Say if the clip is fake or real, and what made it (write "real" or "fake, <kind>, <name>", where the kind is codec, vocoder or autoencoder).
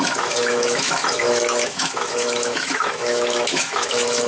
fake, autoencoder, DAC-VAE